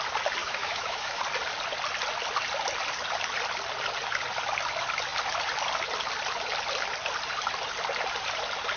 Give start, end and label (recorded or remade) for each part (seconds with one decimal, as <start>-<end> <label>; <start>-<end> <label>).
0.0-0.4 recorded; 0.4-1.2 remade; 1.2-8.8 recorded